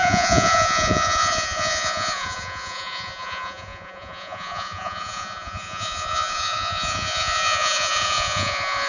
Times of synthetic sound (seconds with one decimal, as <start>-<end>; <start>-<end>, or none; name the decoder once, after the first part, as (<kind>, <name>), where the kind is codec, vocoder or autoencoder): 0.0-8.9 (vocoder, Vocos)